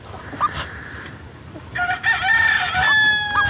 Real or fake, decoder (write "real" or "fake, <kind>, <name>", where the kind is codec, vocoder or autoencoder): real